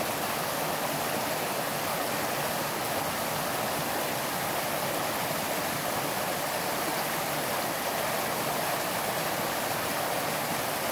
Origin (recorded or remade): recorded